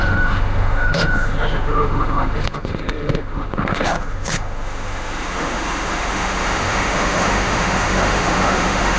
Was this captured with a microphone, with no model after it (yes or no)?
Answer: no